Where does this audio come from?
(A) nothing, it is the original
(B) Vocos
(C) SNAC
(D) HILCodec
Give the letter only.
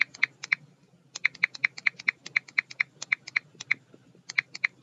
A